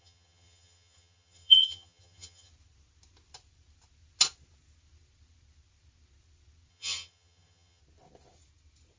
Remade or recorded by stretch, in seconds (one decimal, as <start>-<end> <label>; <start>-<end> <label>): 0.0-2.5 remade; 2.5-6.7 recorded; 6.7-7.8 remade; 7.8-9.0 recorded

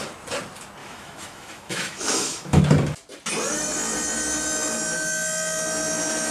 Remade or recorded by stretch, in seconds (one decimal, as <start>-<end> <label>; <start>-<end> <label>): 0.0-0.8 recorded; 0.8-2.6 remade; 2.6-6.3 recorded

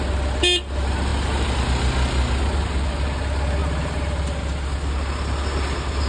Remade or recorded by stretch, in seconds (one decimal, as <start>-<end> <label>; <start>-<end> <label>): 0.0-3.6 recorded; 3.6-4.4 remade; 4.4-6.1 recorded

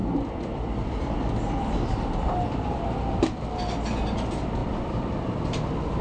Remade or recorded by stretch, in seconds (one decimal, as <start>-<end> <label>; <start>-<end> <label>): 0.0-3.4 remade; 3.4-4.6 recorded; 4.6-6.0 remade

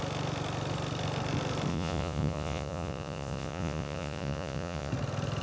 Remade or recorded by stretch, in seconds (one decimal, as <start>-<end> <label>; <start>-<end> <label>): 0.0-1.7 recorded; 1.7-4.9 remade; 4.9-5.4 recorded

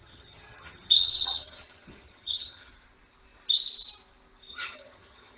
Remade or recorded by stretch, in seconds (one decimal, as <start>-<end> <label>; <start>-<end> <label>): 0.0-2.7 remade; 2.7-4.5 recorded; 4.5-5.4 remade